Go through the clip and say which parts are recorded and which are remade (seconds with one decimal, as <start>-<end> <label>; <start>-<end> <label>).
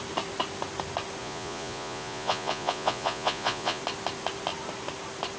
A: 0.0-1.2 recorded; 1.2-3.8 remade; 3.8-5.4 recorded